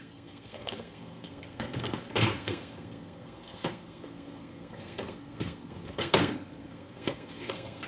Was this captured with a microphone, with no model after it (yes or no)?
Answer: no